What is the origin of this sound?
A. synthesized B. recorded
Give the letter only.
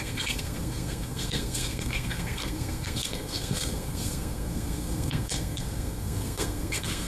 A